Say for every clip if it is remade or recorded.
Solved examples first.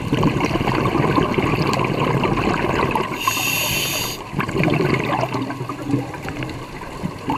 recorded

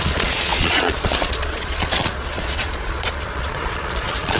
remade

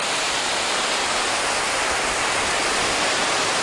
recorded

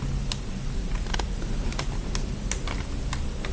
recorded